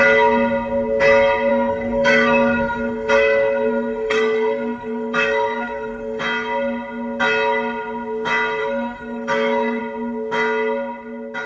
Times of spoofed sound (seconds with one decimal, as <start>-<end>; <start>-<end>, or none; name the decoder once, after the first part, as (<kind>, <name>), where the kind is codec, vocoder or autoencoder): 1.5-6.2 (codec, SNAC); 8.6-9.8